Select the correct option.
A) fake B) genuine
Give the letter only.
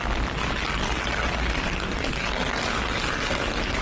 B